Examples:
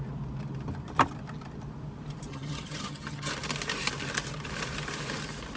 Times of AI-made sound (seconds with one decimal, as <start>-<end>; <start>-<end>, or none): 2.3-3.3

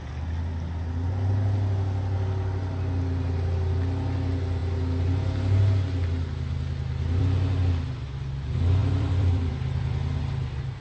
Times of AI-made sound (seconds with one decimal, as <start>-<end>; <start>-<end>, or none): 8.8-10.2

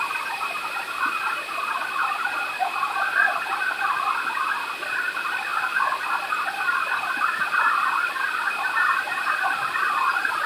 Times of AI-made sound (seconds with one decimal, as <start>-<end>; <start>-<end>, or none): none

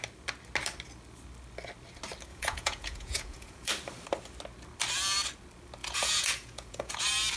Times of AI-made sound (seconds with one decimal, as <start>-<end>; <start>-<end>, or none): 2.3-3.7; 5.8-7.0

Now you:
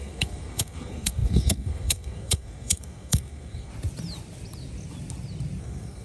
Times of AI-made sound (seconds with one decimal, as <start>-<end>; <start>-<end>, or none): 0.0-3.7; 5.6-6.0

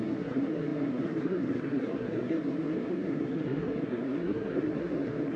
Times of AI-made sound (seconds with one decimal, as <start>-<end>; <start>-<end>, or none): 0.0-5.4

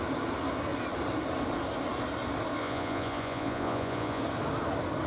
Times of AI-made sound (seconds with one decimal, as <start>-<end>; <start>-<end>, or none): 2.6-4.2